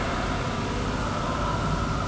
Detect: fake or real real